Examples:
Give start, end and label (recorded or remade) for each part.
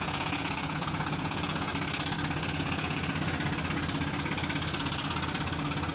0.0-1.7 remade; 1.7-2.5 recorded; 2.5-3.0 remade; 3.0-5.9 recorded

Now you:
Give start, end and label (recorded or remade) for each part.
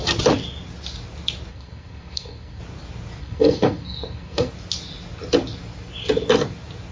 0.0-1.5 recorded; 1.5-2.6 remade; 2.6-3.2 recorded; 3.2-4.5 remade; 4.5-6.9 recorded